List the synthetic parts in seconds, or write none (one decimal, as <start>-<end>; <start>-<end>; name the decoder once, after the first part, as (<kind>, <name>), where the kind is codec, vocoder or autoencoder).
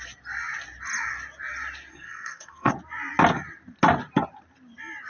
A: 1.9-2.7 (codec, SNAC)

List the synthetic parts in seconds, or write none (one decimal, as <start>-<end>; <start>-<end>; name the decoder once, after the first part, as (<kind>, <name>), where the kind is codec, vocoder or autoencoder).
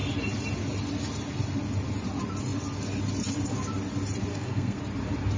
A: 4.3-4.8 (codec, SNAC)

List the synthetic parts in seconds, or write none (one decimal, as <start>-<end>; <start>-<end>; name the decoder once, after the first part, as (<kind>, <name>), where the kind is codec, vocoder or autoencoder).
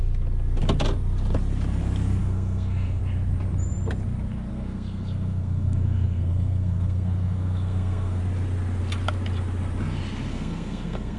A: 2.2-3.0 (codec, SNAC); 4.5-8.2; 10.3-11.2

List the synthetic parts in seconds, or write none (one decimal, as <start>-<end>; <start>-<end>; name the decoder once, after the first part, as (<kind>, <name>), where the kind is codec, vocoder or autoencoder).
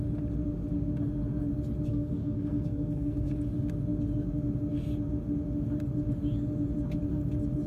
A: 1.9-3.3 (codec, SNAC)